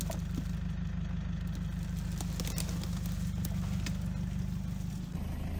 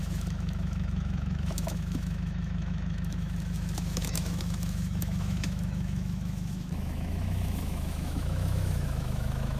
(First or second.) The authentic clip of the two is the first